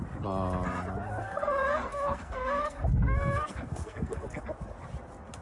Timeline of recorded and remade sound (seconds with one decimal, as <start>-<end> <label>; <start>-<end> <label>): 0.0-1.2 recorded; 1.2-4.4 remade; 4.4-5.4 recorded